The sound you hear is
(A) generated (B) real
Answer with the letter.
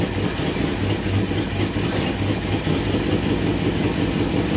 B